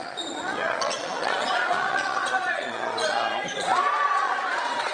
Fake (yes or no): yes